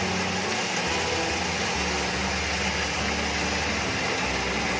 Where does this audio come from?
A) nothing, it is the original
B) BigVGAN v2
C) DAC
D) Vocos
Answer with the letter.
A